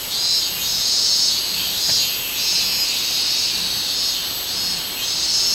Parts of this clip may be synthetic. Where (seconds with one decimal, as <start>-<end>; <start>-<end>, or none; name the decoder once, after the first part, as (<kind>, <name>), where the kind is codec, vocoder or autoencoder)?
0.7-1.4 (vocoder, Vocos)